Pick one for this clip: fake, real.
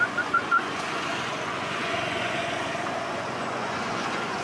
fake